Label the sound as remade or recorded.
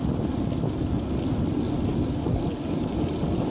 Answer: recorded